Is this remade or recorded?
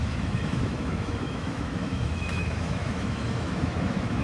remade